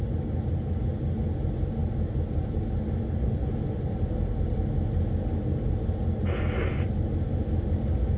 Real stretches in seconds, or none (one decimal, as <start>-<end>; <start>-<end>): 0.0-8.2